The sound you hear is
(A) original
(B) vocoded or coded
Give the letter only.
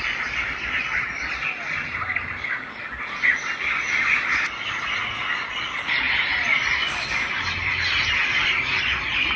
A